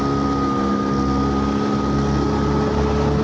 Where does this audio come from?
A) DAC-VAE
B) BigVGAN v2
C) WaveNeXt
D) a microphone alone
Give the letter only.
D